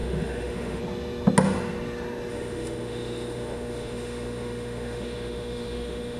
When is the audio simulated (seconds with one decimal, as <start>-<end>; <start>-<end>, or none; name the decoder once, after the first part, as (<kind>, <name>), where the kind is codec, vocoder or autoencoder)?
0.0-0.8 (autoencoder, DAC-VAE); 2.3-6.2

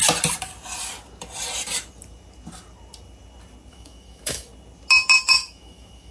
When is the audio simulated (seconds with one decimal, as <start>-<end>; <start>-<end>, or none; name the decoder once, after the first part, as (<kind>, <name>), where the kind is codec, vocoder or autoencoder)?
3.7-4.5 (autoencoder, DAC-VAE); 5.2-6.1

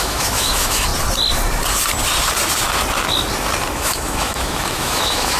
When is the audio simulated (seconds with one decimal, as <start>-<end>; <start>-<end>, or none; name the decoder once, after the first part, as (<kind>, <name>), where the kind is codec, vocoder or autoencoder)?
0.0-0.9 (autoencoder, DAC-VAE); 3.7-5.4

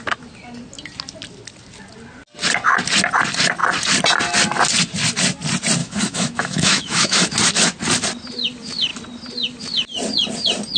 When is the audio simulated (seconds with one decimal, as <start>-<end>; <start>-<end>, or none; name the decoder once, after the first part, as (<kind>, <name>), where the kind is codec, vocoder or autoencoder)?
5.8-7.3 (autoencoder, DAC-VAE)